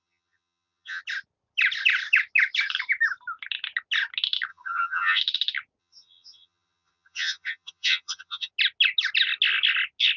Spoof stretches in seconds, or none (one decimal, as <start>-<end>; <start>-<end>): 0.0-1.0; 4.5-5.2; 5.8-8.5

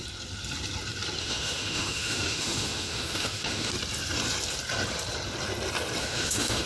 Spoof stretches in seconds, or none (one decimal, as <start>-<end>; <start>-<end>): 1.2-3.7; 6.0-6.7

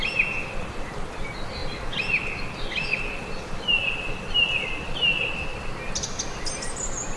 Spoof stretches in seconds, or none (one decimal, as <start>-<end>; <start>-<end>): none

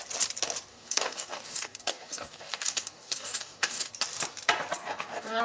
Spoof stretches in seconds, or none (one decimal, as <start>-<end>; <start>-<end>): 0.7-3.9; 4.8-5.4

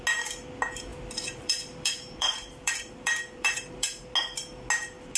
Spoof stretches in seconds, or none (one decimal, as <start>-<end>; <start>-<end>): 0.9-4.0

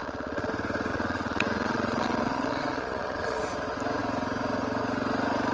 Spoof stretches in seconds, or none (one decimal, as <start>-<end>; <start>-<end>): 0.0-0.5; 0.9-3.4

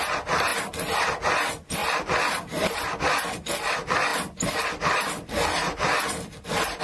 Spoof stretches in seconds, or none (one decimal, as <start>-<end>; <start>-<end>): 1.8-2.4; 4.1-6.8

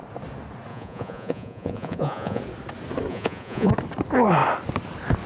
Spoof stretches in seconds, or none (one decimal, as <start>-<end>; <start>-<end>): 0.7-2.4; 3.1-3.7